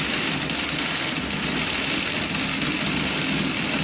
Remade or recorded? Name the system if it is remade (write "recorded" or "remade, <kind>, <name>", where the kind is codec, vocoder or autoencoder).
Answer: recorded